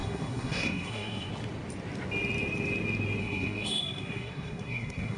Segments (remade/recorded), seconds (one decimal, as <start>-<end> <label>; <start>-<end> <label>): 0.0-1.3 remade; 1.3-3.2 recorded; 3.2-5.2 remade